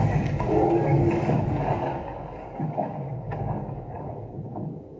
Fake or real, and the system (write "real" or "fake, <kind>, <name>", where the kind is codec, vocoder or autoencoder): fake, codec, DAC